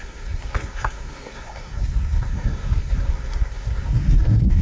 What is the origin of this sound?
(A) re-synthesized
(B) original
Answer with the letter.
A